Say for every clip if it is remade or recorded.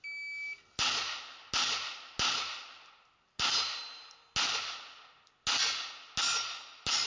recorded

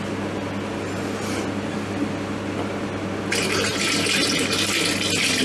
recorded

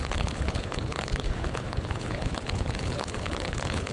remade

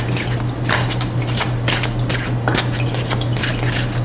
recorded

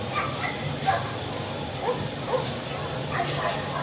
recorded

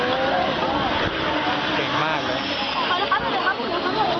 recorded